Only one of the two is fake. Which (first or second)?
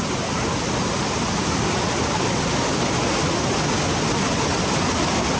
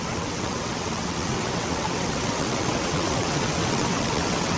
second